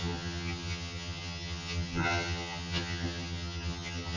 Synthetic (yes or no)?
yes